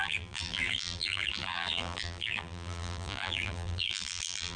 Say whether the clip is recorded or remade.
remade